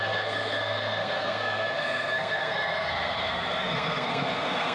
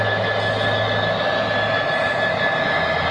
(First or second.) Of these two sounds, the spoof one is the first